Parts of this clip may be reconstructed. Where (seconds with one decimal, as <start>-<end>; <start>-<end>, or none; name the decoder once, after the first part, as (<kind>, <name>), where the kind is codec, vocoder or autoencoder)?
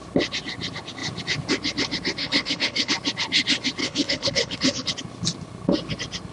2.2-2.9 (codec, HILCodec); 3.8-4.9